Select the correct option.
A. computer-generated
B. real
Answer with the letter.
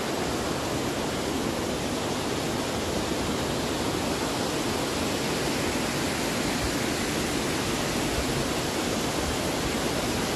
B